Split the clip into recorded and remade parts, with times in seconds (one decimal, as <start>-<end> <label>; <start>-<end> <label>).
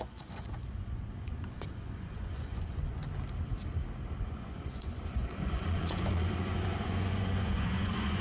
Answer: 0.0-3.0 remade; 3.0-4.2 recorded; 4.2-8.2 remade